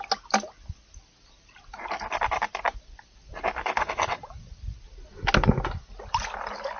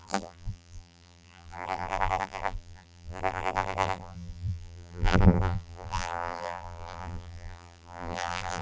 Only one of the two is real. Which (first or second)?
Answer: first